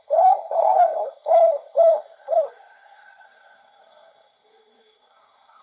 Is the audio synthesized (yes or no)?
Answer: yes